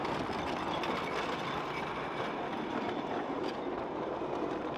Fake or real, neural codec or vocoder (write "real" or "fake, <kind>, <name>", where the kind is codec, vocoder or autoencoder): fake, vocoder, BigVGAN v2